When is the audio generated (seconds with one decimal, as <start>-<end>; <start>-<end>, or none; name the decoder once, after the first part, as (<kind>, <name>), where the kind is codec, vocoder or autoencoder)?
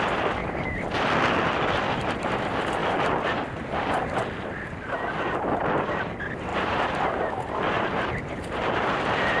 2.8-5.6 (vocoder, BigVGAN v2); 6.5-7.3